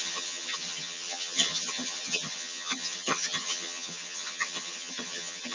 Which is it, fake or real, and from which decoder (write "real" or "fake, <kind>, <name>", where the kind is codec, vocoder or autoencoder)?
fake, vocoder, HiFi-GAN